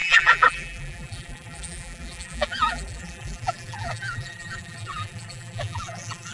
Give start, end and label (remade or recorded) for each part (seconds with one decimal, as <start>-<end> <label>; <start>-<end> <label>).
0.0-6.3 remade